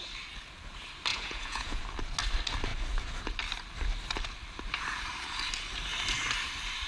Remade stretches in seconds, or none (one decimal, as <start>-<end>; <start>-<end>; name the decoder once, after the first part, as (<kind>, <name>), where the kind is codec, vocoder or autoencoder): 1.1-1.8 (vocoder, Vocos)